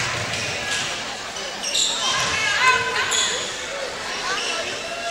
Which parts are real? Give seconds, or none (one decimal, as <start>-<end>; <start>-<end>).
0.0-5.1